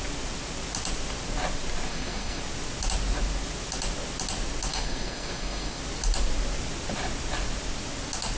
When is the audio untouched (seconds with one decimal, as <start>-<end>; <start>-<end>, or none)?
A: 0.0-1.9; 2.4-4.7; 5.8-8.4